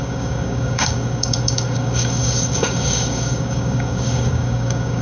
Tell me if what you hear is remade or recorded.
remade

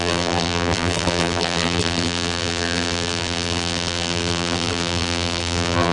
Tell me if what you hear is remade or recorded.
remade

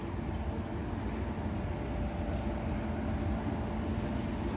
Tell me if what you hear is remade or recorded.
recorded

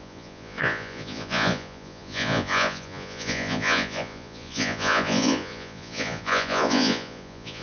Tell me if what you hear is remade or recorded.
remade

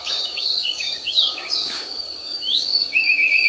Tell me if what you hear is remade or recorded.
remade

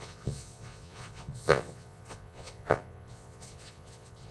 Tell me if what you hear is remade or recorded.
remade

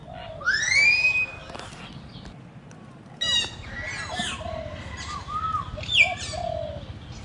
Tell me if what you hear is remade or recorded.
recorded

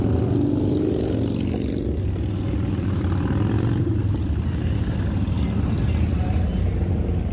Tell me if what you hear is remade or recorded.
recorded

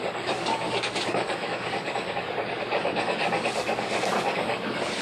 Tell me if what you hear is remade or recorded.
remade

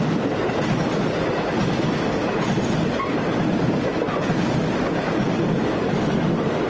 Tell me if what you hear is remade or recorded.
recorded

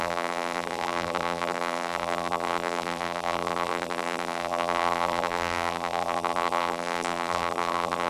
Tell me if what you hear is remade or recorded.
remade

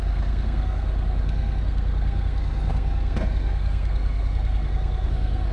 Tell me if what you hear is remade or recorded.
remade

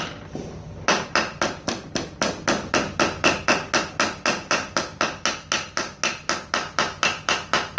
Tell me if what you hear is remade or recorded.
recorded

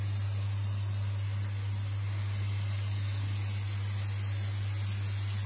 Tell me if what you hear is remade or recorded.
recorded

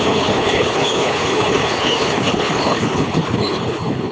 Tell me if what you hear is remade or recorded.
remade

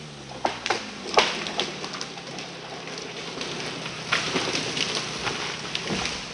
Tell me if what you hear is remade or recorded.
recorded